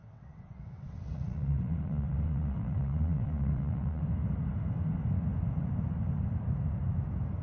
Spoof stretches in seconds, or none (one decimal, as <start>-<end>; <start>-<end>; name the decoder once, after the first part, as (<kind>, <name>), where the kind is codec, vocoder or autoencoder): 0.0-4.0 (vocoder, WaveNeXt)